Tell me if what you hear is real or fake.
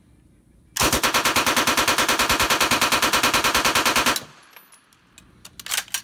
real